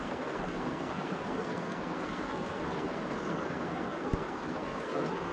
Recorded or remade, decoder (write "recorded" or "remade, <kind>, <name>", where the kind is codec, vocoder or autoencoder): remade, codec, SNAC